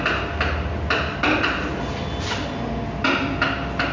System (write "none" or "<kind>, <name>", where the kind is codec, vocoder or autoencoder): none